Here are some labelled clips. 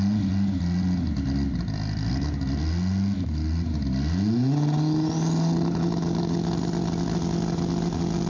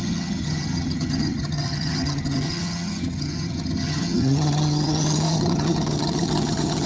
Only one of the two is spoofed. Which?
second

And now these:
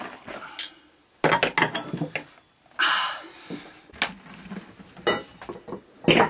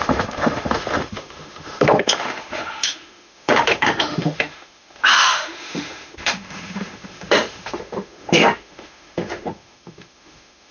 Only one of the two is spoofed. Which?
second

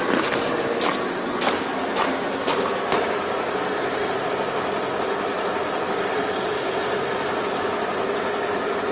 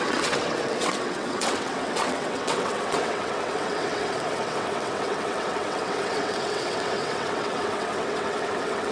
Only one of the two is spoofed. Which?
second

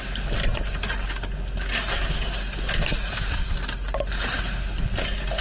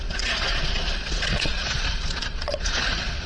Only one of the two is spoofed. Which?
second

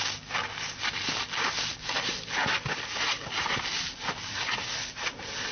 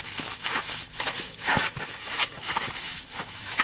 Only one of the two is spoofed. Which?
second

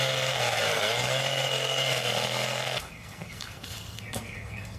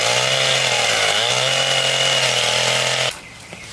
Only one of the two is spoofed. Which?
first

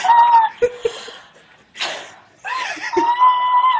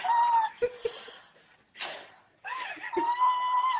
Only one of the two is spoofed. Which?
second